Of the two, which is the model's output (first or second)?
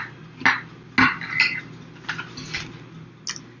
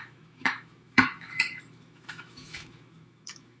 second